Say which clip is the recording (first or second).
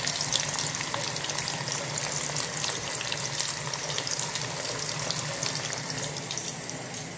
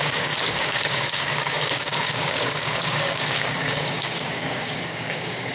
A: first